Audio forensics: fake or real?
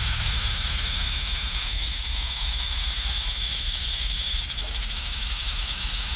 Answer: fake